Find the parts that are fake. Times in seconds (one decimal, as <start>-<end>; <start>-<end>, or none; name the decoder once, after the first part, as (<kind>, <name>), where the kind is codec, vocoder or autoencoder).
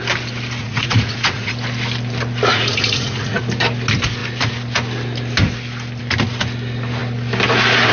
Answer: 0.6-1.5 (vocoder, Vocos); 2.5-3.4